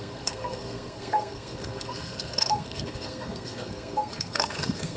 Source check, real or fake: fake